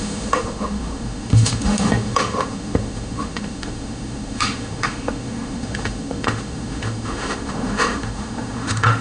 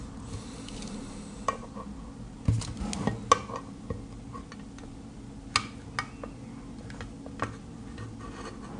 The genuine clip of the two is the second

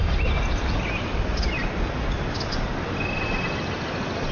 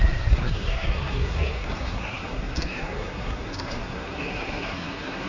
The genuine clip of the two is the first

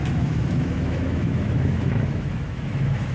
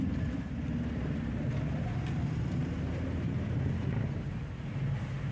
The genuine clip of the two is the second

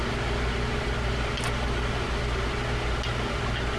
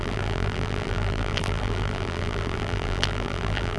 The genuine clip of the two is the first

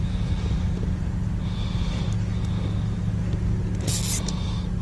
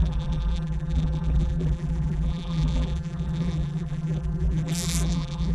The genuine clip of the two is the first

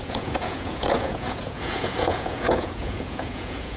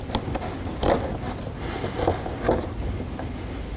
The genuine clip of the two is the second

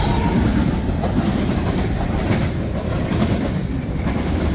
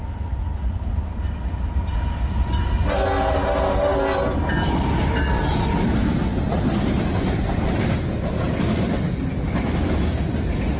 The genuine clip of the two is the second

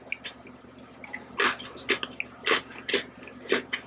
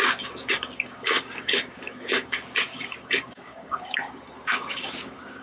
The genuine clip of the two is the first